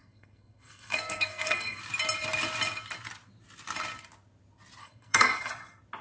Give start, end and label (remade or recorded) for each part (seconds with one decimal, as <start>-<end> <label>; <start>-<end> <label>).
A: 0.0-1.8 remade; 1.8-4.8 recorded; 4.8-5.5 remade; 5.5-6.0 recorded